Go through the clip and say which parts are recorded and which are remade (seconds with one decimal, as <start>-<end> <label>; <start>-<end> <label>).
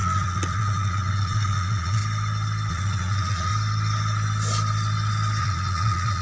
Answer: 0.0-2.0 remade; 2.0-2.7 recorded; 2.7-3.5 remade; 3.5-5.4 recorded; 5.4-6.2 remade